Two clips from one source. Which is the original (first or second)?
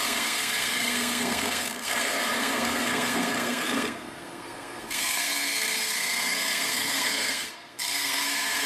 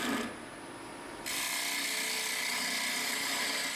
second